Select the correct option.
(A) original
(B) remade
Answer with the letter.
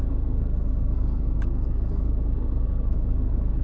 B